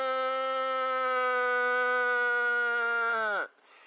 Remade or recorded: recorded